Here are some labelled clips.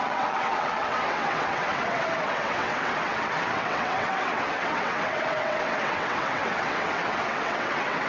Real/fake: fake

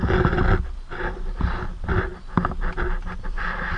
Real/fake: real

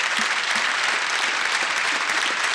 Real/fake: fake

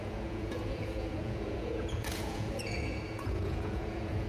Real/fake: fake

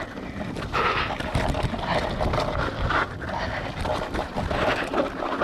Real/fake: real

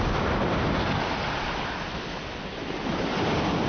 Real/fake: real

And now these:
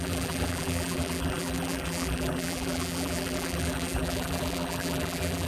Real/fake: fake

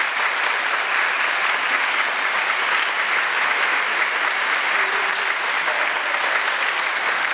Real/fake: real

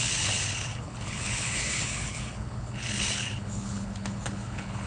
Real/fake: fake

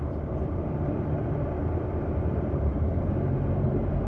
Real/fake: fake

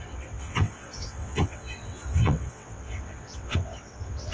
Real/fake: fake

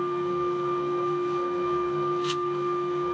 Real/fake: fake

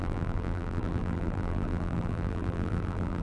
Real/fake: fake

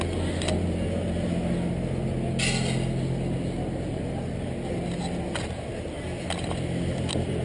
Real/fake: real